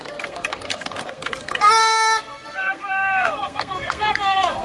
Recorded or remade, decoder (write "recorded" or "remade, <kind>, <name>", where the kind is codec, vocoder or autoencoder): remade, codec, SNAC